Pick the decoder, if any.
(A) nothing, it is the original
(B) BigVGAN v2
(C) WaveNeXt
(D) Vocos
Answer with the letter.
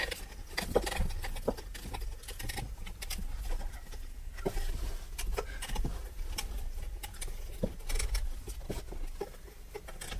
A